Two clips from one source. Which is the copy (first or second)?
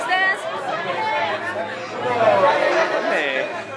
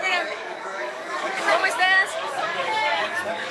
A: second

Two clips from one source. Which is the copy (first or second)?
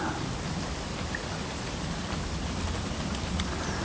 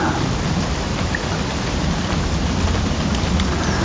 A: first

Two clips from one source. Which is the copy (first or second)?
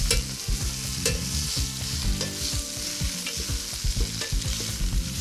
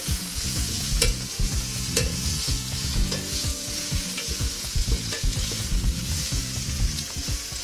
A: second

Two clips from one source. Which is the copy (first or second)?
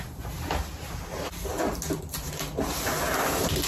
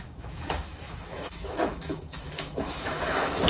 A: second